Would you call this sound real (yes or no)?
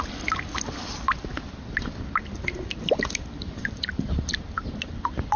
yes